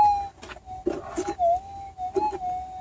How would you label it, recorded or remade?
recorded